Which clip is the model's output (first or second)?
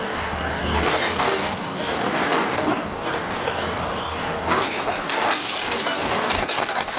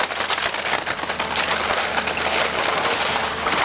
first